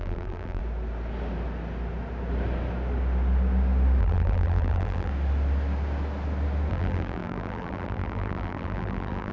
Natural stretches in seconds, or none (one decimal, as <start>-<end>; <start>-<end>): 0.6-4.0; 5.1-6.7